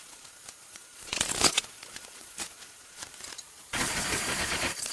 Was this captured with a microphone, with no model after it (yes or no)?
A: no